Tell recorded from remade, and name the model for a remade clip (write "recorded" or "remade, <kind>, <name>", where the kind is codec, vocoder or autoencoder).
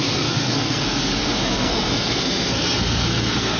remade, codec, SNAC